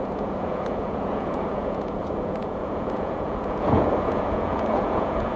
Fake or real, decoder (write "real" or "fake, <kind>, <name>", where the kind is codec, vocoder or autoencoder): fake, vocoder, Vocos